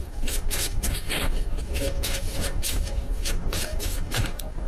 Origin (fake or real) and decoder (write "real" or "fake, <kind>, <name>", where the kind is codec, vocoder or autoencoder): fake, codec, DAC